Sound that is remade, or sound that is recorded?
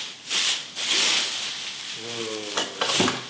recorded